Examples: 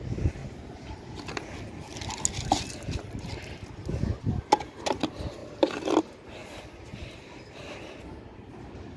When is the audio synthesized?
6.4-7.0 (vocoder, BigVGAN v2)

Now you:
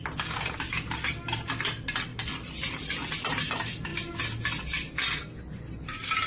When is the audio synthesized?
none

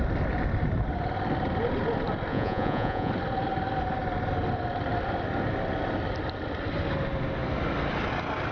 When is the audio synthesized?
2.3-3.1 (vocoder, Vocos)

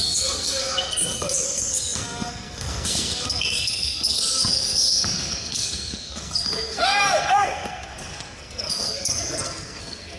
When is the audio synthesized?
0.0-10.2 (codec, SNAC)

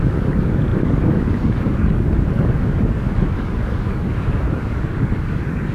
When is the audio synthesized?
0.0-5.7 (codec, DAC)

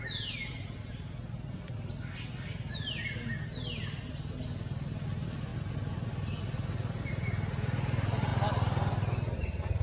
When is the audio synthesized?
none